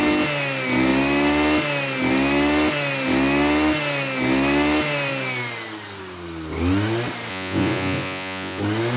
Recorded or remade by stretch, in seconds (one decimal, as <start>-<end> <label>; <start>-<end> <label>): 0.0-7.3 recorded; 7.3-8.6 remade; 8.6-9.0 recorded